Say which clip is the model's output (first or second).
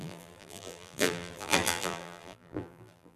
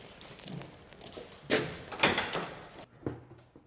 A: first